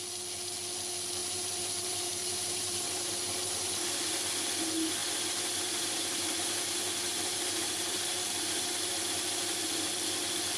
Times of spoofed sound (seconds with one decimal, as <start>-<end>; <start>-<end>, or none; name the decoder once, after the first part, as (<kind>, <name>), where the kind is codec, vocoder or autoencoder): 1.2-4.0 (vocoder, BigVGAN v2); 5.0-8.9